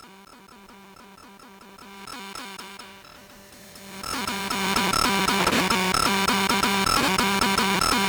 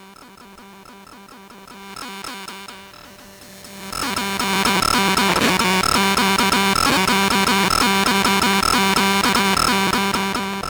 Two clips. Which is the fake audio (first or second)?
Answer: first